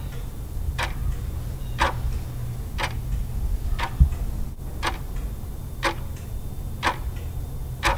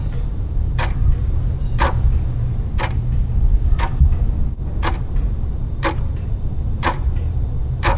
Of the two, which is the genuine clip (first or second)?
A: first